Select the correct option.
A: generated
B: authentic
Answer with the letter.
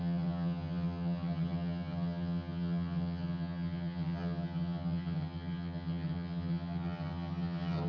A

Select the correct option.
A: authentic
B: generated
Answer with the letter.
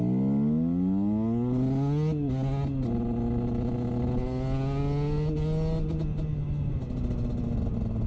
A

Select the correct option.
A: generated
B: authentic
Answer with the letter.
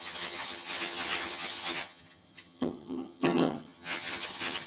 A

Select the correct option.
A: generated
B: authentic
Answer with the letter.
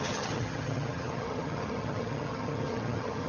A